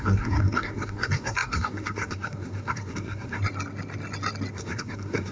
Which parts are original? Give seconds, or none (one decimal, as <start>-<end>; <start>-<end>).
3.4-4.5

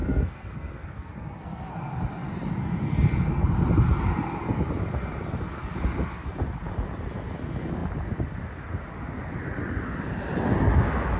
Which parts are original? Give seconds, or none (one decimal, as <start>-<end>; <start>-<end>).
1.7-11.2

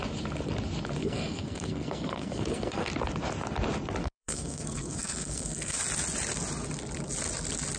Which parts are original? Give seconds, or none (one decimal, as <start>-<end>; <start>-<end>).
0.0-1.0; 2.9-4.0; 5.8-7.8

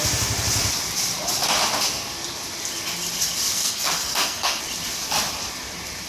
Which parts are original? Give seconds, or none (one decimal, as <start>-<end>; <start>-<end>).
0.0-3.5; 4.6-6.1

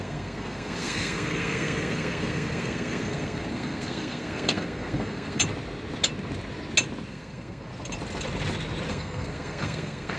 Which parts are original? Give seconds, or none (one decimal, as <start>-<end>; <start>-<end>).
5.4-7.1; 7.7-8.9

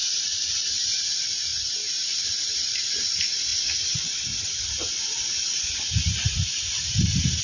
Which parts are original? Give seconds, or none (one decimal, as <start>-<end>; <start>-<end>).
0.0-7.4